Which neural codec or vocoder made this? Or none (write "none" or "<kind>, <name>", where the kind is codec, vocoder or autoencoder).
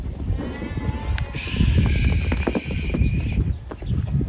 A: none